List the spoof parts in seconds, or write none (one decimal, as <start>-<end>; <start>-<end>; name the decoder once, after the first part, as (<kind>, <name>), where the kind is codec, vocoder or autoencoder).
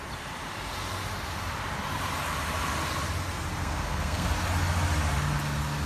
3.6-4.3 (codec, SNAC)